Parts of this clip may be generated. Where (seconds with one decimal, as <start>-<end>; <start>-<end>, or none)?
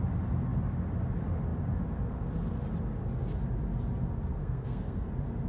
4.4-5.1